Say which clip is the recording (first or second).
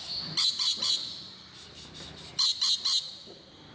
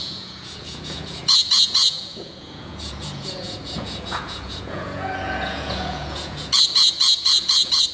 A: first